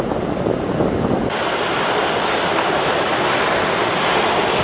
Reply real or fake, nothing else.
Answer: real